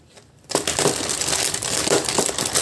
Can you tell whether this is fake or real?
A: real